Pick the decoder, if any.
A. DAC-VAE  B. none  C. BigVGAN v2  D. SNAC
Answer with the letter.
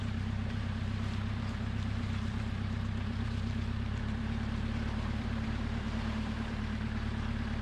C